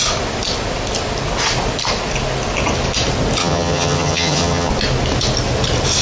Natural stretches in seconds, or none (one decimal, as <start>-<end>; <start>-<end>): 0.0-3.4; 4.7-6.0